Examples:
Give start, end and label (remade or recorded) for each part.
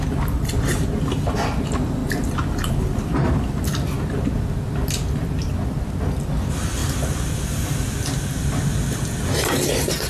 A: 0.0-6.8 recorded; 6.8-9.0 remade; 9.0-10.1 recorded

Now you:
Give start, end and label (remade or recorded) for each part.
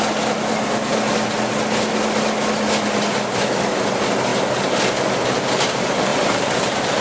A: 0.0-6.1 recorded; 6.1-7.0 remade